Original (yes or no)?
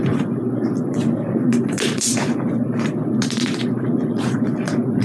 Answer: no